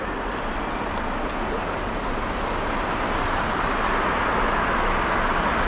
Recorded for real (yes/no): yes